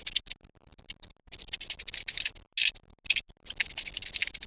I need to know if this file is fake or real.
real